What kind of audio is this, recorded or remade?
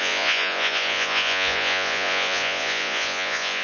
remade